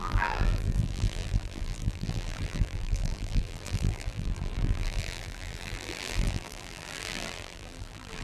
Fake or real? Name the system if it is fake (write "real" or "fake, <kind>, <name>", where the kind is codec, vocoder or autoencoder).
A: fake, vocoder, BigVGAN v2